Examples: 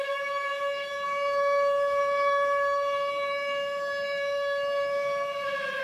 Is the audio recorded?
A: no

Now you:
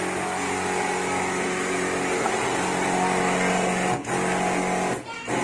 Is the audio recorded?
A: yes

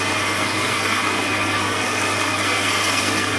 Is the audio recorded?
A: no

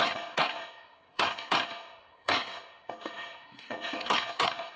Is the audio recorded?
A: no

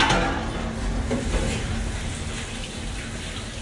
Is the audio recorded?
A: yes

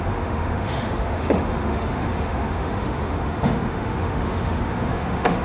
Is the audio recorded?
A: no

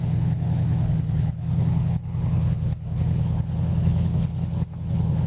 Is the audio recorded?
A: no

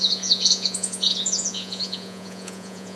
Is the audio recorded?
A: no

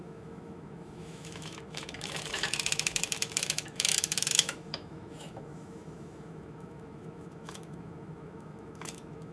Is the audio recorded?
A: no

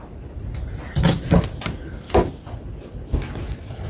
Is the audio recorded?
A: yes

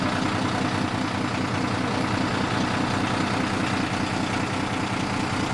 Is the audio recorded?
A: yes